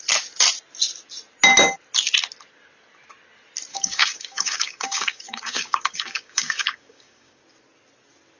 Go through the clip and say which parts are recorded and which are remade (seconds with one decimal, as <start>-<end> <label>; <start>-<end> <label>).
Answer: 0.0-3.7 recorded; 3.7-7.4 remade; 7.4-8.4 recorded